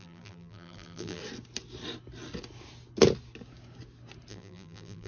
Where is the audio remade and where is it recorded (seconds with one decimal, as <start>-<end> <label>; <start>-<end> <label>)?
0.0-1.2 remade; 1.2-4.3 recorded; 4.3-5.1 remade